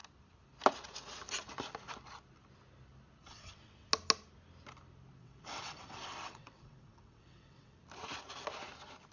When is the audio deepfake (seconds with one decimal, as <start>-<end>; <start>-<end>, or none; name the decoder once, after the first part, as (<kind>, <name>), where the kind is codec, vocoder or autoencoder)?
3.2-3.9 (vocoder, WaveNeXt); 5.2-7.8